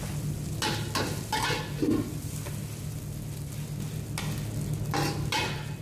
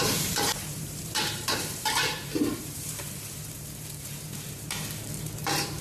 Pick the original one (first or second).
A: first